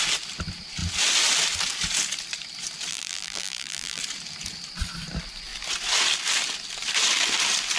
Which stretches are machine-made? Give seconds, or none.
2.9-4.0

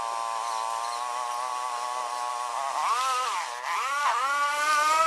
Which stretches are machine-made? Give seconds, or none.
none

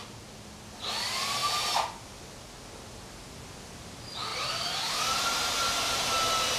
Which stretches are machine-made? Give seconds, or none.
4.3-6.6

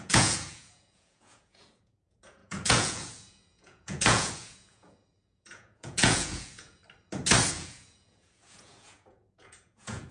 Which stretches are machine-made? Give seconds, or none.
0.0-6.8; 7.5-10.1

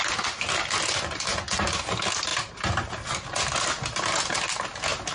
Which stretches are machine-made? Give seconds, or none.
none

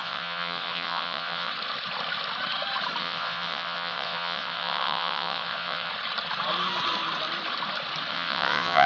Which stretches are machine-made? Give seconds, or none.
0.0-1.5; 3.0-5.9; 8.1-8.9